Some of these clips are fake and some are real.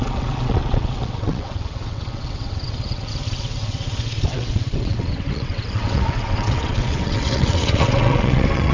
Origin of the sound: fake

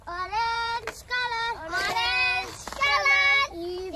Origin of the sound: fake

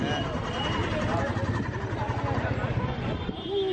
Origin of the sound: real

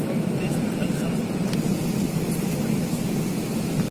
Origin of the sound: real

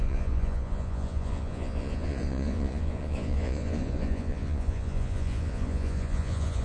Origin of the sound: fake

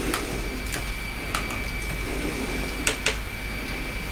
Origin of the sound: real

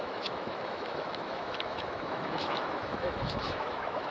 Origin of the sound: fake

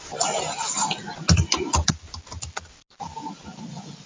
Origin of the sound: real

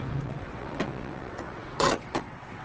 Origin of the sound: fake